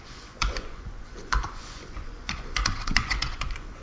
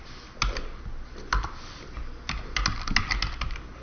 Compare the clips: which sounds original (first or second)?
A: second